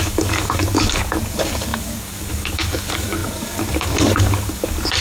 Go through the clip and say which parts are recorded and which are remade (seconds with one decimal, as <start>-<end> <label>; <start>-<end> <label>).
0.0-5.0 remade

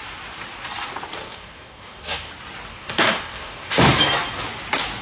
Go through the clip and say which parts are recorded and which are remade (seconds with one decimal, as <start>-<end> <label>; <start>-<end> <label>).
0.0-1.2 recorded; 1.2-2.3 remade; 2.3-2.7 recorded; 2.7-3.7 remade; 3.7-5.0 recorded

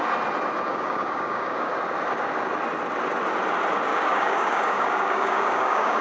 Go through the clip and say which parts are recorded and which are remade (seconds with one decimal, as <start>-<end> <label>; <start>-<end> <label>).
0.0-0.7 recorded; 0.7-1.7 remade; 1.7-3.9 recorded; 3.9-6.0 remade

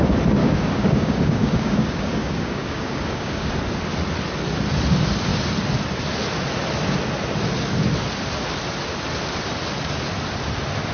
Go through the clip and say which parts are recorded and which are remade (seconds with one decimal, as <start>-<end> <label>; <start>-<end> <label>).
0.0-0.4 recorded; 0.4-3.5 remade; 3.5-10.9 recorded

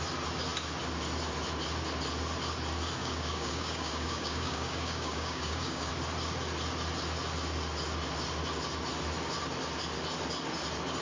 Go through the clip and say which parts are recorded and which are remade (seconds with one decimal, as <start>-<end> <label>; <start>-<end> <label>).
0.0-3.0 recorded; 3.0-5.9 remade; 5.9-11.0 recorded